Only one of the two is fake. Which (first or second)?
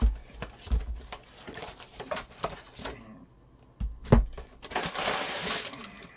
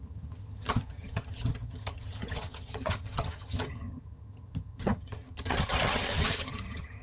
second